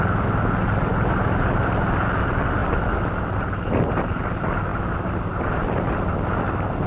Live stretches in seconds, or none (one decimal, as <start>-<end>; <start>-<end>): 0.0-6.9